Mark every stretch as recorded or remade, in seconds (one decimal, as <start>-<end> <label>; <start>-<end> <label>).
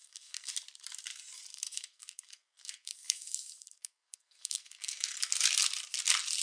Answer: 0.0-0.5 remade; 0.5-1.5 recorded; 1.5-5.3 remade; 5.3-6.4 recorded